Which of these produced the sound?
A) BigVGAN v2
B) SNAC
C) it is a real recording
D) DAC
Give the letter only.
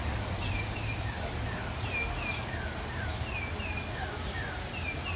C